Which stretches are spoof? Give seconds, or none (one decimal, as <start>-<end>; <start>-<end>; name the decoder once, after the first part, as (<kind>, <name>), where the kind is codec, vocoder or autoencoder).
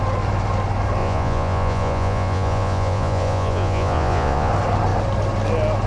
1.0-4.5 (vocoder, Vocos)